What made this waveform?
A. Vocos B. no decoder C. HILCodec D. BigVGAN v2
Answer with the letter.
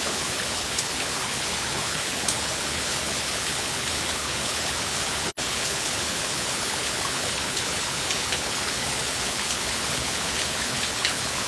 C